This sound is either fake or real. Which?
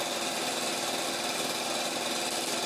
real